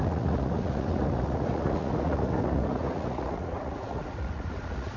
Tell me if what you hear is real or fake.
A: fake